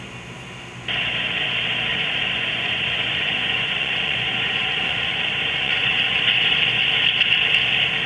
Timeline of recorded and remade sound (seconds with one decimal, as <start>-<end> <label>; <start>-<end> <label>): 0.0-1.9 recorded; 1.9-6.8 remade; 6.8-8.1 recorded